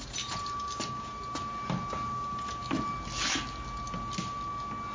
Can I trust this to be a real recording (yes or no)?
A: yes